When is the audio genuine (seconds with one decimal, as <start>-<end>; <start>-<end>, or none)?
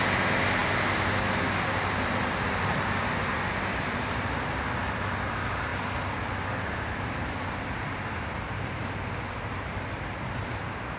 0.0-11.0